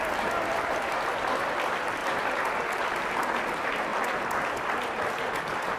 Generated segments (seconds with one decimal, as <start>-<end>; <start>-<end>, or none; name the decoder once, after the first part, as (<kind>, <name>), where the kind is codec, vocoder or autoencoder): none